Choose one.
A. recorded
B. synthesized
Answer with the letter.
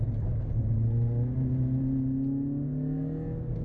A